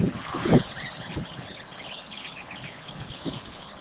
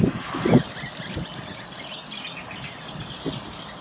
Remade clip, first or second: first